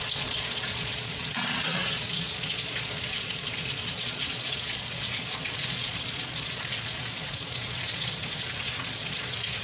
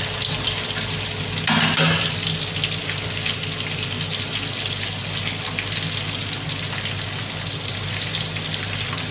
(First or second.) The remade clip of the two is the first